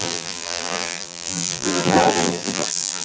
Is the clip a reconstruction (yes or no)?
yes